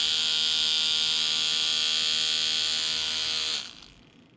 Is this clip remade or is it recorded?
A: recorded